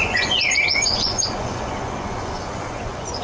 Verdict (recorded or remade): remade